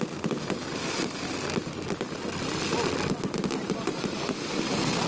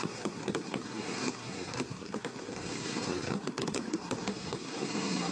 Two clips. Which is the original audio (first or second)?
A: first